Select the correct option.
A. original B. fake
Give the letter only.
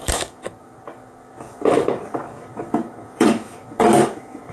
B